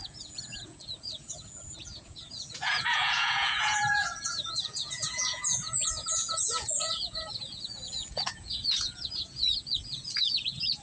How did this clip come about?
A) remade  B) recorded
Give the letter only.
A